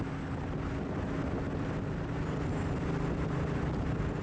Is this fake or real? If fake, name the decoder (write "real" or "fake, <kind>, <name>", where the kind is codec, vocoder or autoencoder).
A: real